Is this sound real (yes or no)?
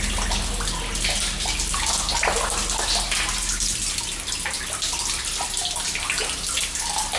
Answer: yes